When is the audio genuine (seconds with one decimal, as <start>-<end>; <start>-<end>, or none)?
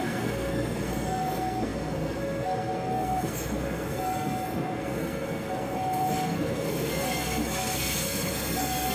none